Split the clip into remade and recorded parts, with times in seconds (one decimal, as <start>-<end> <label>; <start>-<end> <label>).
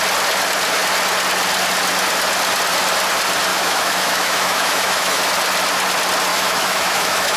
0.0-3.5 recorded; 3.5-5.2 remade; 5.2-6.3 recorded; 6.3-7.4 remade